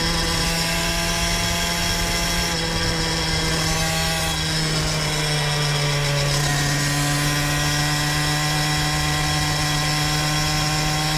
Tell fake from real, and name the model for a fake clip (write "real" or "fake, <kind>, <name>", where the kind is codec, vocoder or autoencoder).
real